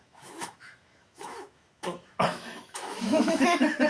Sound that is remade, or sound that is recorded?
remade